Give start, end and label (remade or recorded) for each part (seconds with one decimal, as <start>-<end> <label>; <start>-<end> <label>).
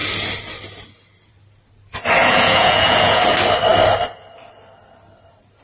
0.0-2.2 recorded; 2.2-3.2 remade; 3.2-5.6 recorded